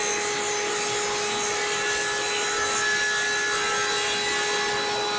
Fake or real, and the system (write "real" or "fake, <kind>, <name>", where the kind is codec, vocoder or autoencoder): real